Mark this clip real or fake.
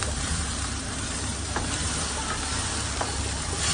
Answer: fake